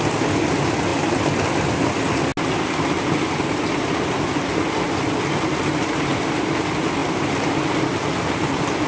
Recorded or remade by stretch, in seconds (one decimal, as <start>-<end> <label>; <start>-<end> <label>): 0.0-8.9 recorded